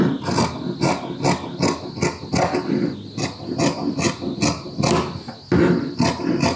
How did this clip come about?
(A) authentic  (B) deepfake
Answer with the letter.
A